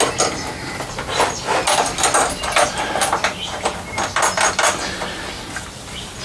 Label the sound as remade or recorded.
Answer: recorded